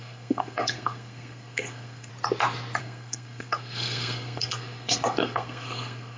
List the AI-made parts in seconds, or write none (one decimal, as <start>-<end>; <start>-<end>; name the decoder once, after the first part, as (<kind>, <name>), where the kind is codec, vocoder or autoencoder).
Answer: 0.0-2.1 (codec, SNAC); 2.8-6.2